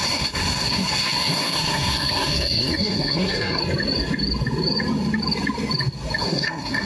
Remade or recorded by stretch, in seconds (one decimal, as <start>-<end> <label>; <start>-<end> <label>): 0.0-3.6 remade; 3.6-6.2 recorded; 6.2-6.9 remade